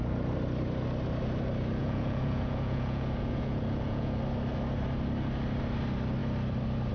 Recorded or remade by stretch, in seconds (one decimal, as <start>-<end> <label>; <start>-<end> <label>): 0.0-1.8 recorded; 1.8-4.2 remade; 4.2-6.9 recorded